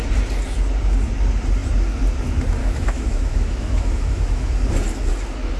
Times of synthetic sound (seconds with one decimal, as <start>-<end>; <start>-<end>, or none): 2.6-4.5